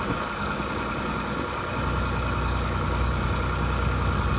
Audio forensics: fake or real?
fake